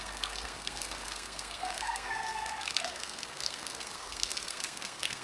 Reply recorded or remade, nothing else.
remade